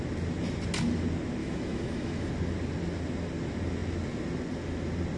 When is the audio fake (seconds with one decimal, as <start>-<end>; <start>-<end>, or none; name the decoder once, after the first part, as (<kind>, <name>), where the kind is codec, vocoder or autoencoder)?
1.4-2.3 (autoencoder, DAC-VAE)